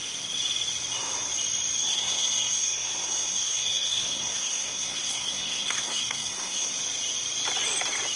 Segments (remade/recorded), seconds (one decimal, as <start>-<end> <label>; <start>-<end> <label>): 0.0-1.8 recorded; 1.8-6.7 remade; 6.7-8.2 recorded